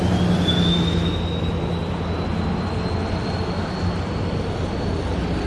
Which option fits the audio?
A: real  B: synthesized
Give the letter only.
A